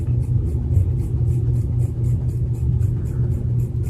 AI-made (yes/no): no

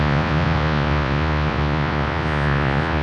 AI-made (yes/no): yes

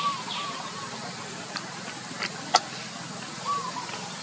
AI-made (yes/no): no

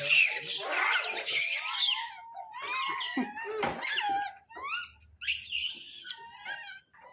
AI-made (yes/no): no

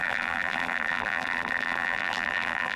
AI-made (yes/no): yes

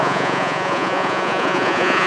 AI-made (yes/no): yes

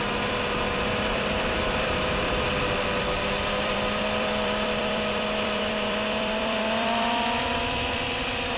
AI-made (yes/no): yes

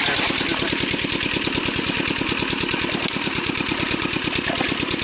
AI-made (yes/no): no